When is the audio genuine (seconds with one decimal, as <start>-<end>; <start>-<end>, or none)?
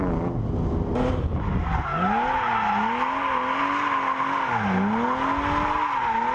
0.0-6.3